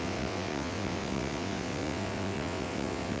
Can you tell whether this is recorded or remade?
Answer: remade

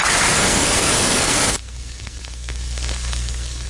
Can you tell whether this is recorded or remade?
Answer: remade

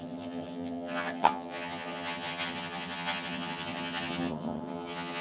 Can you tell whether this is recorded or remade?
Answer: remade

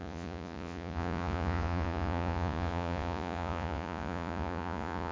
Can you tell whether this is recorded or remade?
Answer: remade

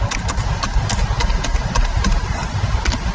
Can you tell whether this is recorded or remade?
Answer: recorded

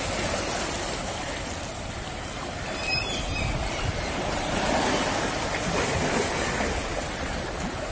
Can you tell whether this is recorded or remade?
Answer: recorded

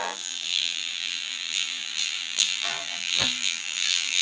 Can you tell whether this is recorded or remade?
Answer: remade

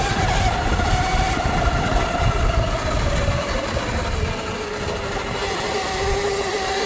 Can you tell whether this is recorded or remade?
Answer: recorded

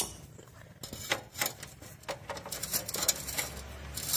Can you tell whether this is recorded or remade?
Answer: recorded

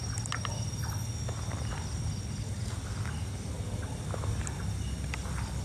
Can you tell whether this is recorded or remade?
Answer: recorded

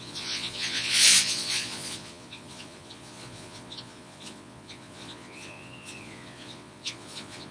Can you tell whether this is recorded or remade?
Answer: remade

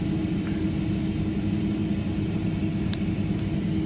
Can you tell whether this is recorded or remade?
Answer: recorded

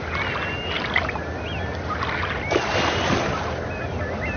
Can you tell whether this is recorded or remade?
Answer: recorded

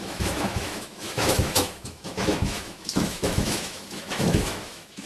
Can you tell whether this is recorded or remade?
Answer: remade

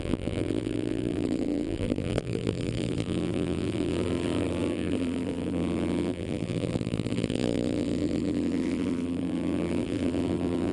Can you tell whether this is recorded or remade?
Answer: remade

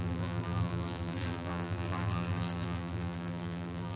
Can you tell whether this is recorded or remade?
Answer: remade